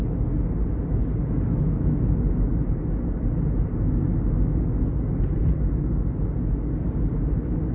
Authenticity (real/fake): real